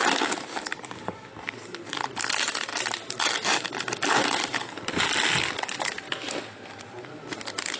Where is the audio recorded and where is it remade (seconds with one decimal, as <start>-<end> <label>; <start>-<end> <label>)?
0.0-0.5 recorded; 0.5-1.3 remade; 1.3-7.8 recorded